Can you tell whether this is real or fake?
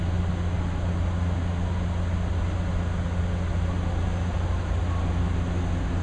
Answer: real